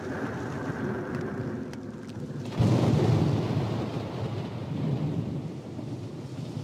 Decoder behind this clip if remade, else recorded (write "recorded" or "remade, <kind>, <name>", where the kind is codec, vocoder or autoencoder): remade, vocoder, BigVGAN v2